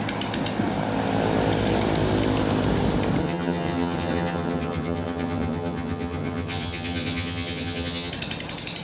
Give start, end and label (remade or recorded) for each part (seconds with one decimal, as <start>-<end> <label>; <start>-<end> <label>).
0.0-3.2 recorded; 3.2-8.1 remade; 8.1-8.8 recorded